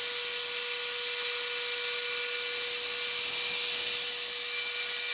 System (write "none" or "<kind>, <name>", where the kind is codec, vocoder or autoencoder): none